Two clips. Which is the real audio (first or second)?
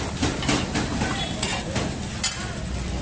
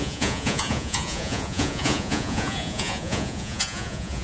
first